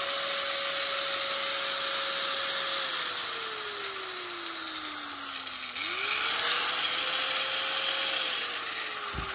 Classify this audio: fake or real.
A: real